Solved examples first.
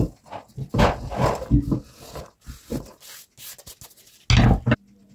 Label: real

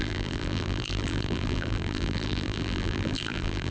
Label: fake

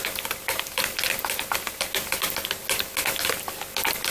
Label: real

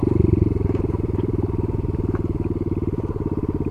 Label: fake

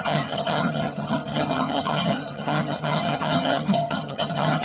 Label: fake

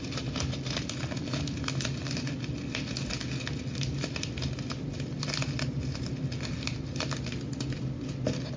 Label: real